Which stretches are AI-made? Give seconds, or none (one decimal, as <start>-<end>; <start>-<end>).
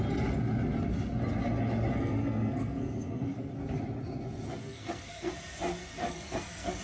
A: 1.9-3.5; 4.6-5.3; 5.8-6.8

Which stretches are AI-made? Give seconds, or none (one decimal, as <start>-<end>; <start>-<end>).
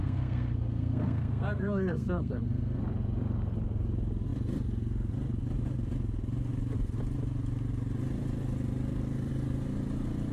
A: 0.0-2.8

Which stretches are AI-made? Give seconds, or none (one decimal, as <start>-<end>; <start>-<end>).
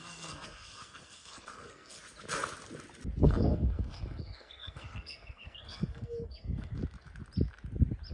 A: 0.0-2.0; 3.2-6.7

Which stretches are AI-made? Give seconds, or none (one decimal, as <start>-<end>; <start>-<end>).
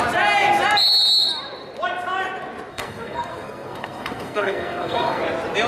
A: 2.7-5.2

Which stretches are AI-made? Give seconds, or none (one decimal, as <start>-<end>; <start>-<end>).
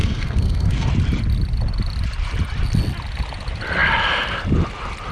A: 0.0-0.9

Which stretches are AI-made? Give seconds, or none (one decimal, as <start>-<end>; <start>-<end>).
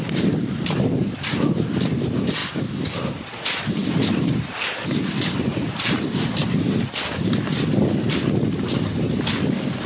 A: none